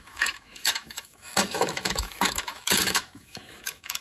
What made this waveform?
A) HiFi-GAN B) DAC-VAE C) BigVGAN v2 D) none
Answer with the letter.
B